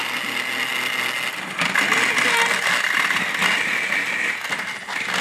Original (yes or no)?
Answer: yes